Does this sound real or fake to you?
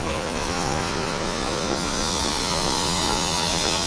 fake